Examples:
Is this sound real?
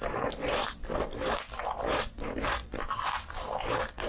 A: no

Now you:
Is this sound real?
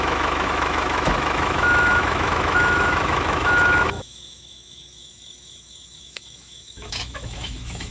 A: no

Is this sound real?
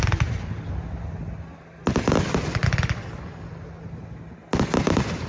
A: yes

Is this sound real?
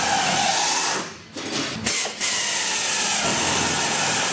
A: yes